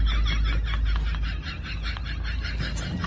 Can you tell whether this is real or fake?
real